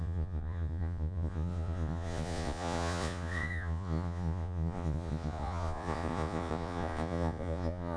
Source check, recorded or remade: remade